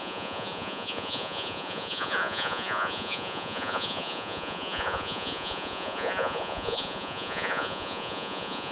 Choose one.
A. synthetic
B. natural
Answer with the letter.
A